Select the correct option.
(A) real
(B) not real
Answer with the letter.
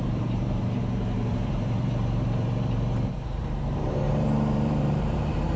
B